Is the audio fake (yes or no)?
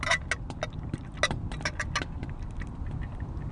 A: no